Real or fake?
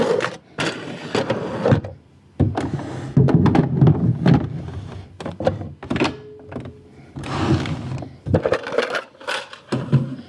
real